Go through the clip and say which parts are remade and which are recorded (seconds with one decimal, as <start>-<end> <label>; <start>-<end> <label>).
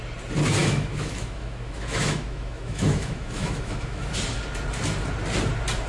0.0-0.6 recorded; 0.6-4.1 remade; 4.1-5.9 recorded